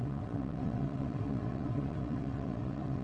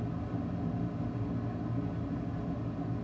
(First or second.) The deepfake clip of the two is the first